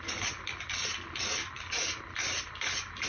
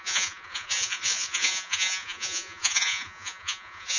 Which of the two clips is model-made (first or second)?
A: second